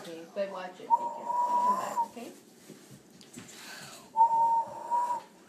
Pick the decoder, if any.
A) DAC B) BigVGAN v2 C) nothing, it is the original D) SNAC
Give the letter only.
C